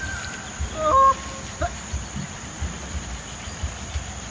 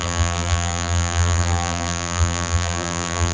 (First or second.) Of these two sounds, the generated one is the second